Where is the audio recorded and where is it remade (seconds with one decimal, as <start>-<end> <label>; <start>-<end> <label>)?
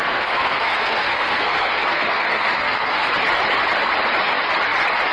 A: 0.0-3.1 remade; 3.1-5.1 recorded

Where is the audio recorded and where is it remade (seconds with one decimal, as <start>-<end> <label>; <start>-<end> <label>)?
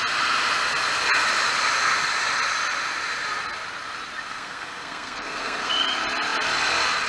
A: 0.0-4.3 recorded; 4.3-5.7 remade; 5.7-7.1 recorded